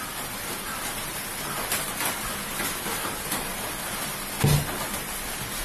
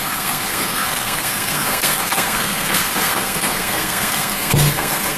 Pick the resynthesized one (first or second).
second